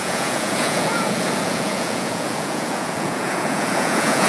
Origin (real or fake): fake